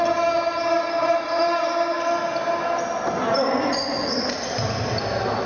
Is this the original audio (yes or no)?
yes